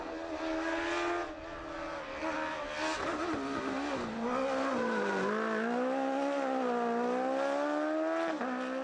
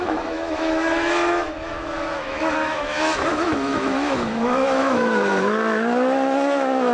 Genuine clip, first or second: first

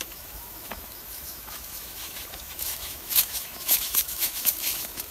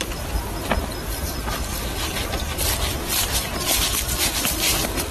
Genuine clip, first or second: second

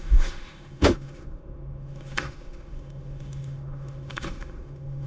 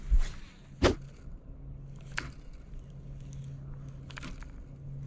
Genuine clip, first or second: second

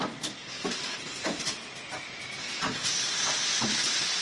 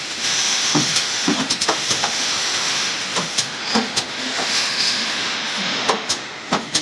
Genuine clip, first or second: first